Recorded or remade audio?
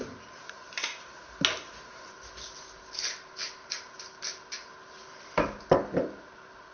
recorded